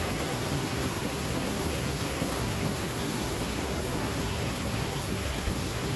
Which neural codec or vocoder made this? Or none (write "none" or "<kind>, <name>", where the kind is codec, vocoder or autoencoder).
codec, SNAC